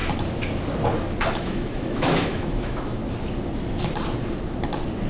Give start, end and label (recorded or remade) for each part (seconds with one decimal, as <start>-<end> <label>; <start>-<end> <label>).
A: 0.0-1.3 recorded; 1.3-3.0 remade; 3.0-5.1 recorded